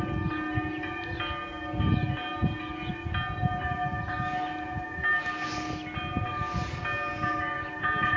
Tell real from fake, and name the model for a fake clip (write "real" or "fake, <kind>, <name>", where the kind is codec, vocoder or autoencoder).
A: real